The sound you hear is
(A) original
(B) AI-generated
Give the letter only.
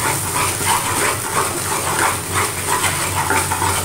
A